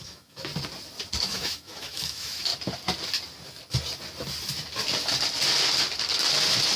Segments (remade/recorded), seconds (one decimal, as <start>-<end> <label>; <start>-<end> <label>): 0.0-0.5 remade; 0.5-1.2 recorded; 1.2-2.5 remade; 2.5-6.8 recorded